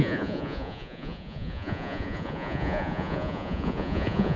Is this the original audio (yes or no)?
no